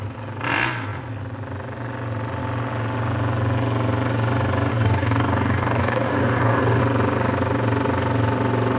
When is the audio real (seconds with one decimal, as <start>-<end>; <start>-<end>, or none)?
0.0-4.7; 6.8-8.8

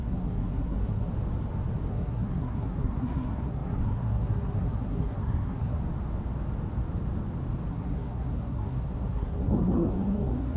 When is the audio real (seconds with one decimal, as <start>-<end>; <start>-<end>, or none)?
1.1-1.9; 5.8-7.7

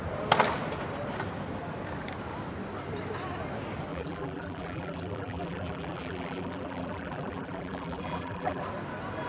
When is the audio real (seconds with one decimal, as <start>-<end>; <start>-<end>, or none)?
0.0-3.9; 8.6-9.3

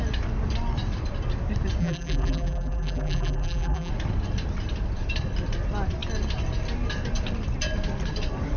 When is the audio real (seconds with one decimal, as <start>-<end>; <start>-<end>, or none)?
0.0-1.8; 3.9-8.6

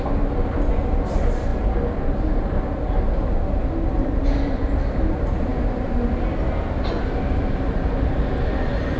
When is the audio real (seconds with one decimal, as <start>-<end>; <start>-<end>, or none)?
0.0-9.0